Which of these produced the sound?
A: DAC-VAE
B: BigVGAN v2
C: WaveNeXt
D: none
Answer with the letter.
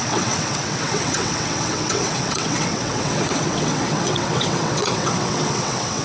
C